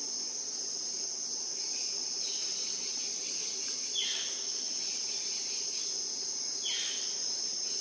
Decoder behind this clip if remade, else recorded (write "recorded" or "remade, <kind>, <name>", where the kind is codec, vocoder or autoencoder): recorded